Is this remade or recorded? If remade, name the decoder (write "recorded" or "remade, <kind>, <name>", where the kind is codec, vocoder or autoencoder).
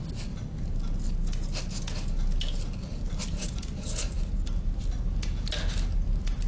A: recorded